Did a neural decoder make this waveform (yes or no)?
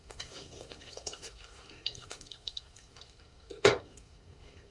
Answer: yes